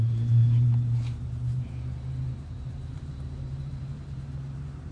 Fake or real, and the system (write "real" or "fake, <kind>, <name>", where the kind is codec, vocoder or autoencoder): fake, vocoder, BigVGAN v2